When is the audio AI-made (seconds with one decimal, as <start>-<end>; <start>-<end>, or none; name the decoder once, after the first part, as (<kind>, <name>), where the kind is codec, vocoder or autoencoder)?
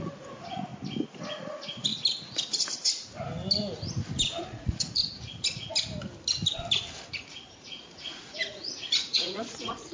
0.0-0.7 (vocoder, Vocos); 1.2-1.9; 4.4-5.0; 7.6-9.9